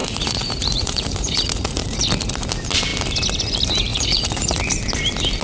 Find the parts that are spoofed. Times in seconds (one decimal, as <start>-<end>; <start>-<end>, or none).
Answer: 0.0-2.0; 3.9-4.6

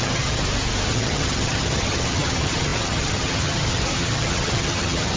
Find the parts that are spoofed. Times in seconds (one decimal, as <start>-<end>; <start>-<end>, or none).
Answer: 0.0-0.4; 0.9-5.2